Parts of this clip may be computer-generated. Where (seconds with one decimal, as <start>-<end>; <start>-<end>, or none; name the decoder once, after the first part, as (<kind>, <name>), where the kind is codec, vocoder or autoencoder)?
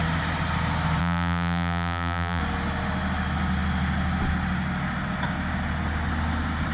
1.0-2.4 (vocoder, BigVGAN v2)